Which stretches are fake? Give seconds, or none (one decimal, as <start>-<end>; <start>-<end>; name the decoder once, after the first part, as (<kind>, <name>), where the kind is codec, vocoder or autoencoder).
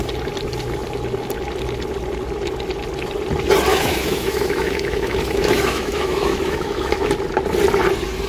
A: 3.7-7.1 (autoencoder, DAC-VAE)